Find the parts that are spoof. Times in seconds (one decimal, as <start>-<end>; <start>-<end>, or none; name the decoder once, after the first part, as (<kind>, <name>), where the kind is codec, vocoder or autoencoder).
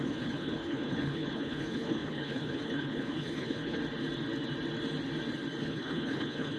0.0-3.8 (codec, HILCodec); 5.6-6.6